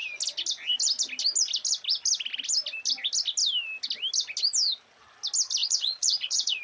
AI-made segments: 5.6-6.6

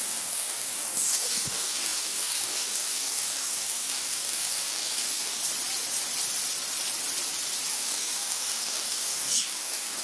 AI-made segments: 0.0-5.4; 7.7-10.0

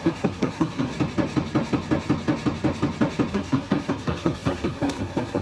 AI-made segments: 0.0-0.9; 3.3-5.4

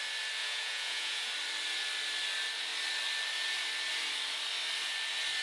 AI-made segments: 0.4-1.3

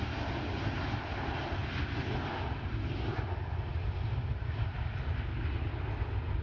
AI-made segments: none